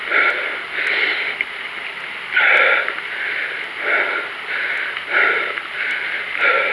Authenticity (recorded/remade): recorded